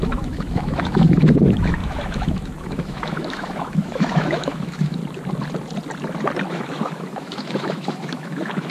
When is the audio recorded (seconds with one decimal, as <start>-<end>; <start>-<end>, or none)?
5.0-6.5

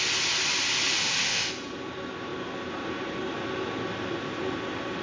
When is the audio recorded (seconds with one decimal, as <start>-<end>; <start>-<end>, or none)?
0.0-1.0; 1.5-5.0

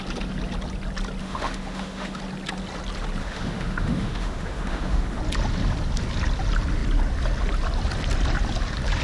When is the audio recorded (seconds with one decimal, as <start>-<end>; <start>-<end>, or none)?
0.0-1.2; 2.2-3.2; 5.2-9.0